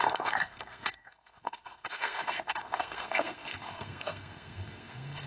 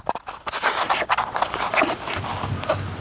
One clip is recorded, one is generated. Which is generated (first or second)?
first